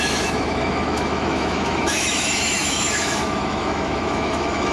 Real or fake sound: fake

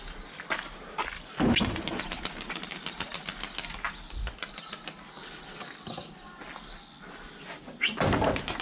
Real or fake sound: real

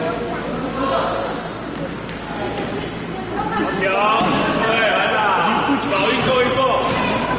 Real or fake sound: real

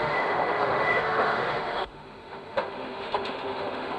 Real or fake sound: fake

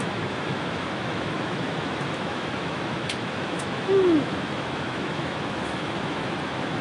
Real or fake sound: fake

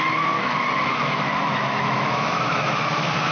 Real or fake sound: fake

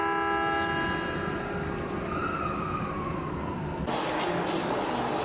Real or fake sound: real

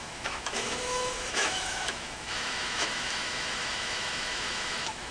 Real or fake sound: fake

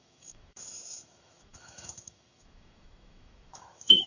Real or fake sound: fake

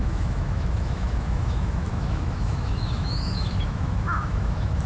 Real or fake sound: fake